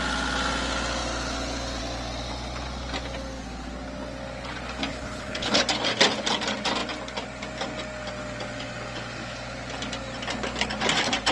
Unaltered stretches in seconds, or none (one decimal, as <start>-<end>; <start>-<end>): 0.0-4.9; 5.6-11.3